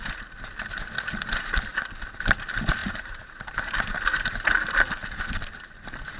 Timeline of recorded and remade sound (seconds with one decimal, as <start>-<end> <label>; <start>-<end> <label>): 0.0-2.8 recorded; 2.8-4.0 remade; 4.0-6.2 recorded